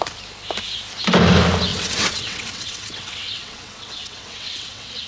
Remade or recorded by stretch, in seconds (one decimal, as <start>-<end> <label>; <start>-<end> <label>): 0.0-1.7 recorded; 1.7-5.1 remade

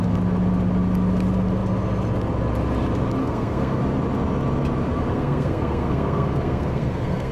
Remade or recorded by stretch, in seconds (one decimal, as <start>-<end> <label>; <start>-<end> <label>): 0.0-3.2 recorded; 3.2-3.8 remade; 3.8-5.1 recorded; 5.1-7.3 remade